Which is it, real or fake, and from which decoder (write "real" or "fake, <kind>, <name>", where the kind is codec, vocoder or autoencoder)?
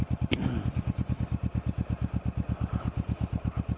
real